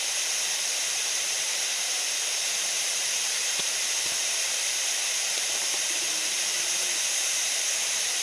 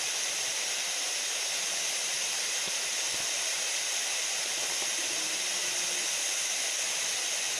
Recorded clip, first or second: second